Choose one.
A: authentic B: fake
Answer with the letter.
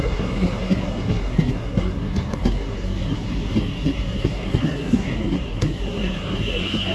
B